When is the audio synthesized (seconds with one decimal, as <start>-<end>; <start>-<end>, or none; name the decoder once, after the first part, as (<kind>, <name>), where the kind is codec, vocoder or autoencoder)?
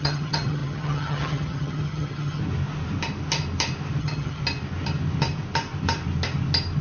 0.0-2.4 (vocoder, HiFi-GAN); 4.0-4.4